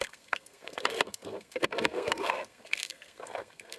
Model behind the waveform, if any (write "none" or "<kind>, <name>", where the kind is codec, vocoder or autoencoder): codec, SNAC